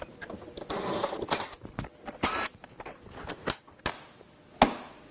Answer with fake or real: real